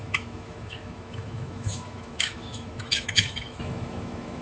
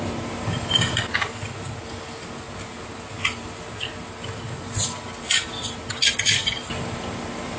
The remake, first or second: first